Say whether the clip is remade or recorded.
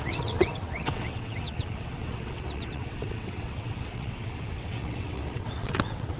remade